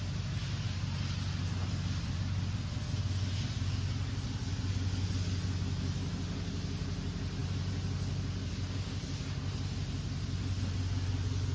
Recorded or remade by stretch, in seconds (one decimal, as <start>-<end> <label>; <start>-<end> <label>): 0.0-11.5 recorded